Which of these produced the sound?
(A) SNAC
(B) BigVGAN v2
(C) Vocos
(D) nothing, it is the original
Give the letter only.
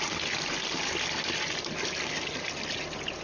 D